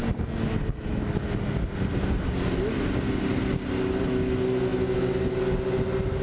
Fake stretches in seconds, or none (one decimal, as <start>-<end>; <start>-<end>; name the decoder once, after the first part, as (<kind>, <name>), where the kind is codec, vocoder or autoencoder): none